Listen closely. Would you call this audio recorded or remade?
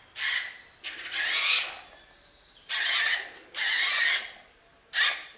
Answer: recorded